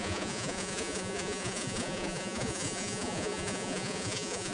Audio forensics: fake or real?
fake